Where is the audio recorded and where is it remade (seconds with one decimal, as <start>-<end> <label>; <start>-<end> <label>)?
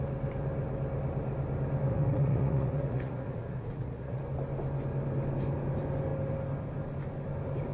0.0-1.9 recorded; 1.9-4.2 remade; 4.2-7.7 recorded